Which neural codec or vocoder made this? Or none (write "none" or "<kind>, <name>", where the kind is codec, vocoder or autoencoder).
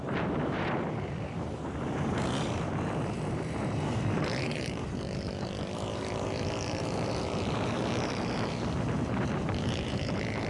vocoder, BigVGAN v2